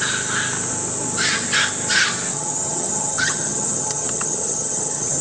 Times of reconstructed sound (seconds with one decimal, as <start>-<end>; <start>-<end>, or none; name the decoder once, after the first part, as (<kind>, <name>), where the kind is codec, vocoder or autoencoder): 2.3-5.2 (vocoder, HiFi-GAN)